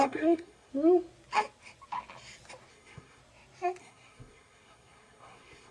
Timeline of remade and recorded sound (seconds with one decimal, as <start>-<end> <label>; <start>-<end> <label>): 0.0-0.7 remade; 0.7-2.7 recorded; 2.7-3.2 remade; 3.2-3.8 recorded; 3.8-5.7 remade